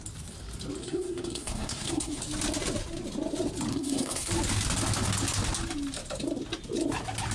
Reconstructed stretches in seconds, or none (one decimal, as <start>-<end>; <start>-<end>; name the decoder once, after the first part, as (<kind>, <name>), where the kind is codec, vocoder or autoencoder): 0.8-2.2 (codec, SNAC); 3.7-4.3